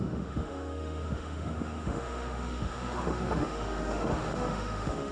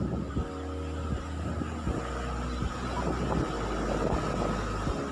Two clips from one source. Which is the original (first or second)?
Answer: second